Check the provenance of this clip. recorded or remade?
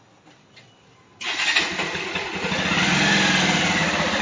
recorded